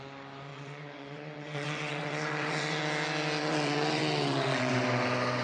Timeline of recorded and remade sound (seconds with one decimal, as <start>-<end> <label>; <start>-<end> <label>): 0.0-0.5 recorded; 0.5-2.8 remade; 2.8-3.4 recorded; 3.4-4.7 remade; 4.7-5.4 recorded